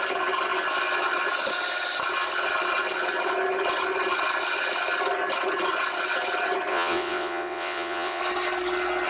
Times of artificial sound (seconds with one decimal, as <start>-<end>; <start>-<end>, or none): 6.7-8.2